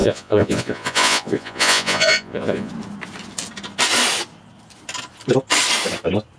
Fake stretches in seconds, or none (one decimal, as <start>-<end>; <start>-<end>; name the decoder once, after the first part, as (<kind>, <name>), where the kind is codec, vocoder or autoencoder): 0.0-2.7 (vocoder, Vocos)